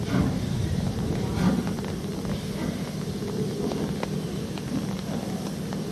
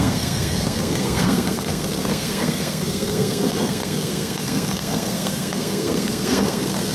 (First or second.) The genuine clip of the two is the first